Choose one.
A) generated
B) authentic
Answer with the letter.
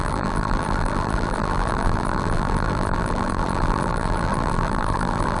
A